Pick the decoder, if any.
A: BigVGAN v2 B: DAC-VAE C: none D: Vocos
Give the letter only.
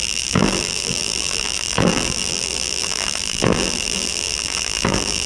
A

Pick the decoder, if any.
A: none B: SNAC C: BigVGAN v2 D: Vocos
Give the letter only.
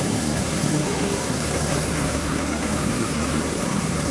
B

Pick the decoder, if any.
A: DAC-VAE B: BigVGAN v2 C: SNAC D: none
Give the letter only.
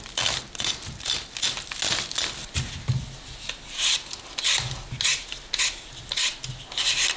D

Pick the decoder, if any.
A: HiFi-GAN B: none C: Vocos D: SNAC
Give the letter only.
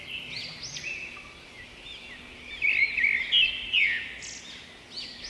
B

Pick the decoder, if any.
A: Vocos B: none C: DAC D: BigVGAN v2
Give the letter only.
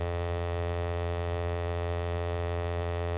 D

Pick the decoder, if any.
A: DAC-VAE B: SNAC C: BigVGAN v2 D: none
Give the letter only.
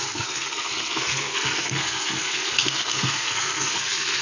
B